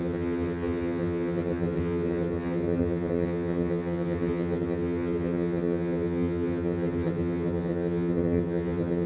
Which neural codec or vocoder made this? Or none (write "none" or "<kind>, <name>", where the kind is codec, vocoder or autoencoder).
vocoder, HiFi-GAN